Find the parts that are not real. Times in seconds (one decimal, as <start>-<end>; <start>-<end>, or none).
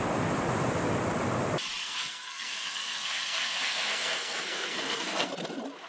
1.8-5.3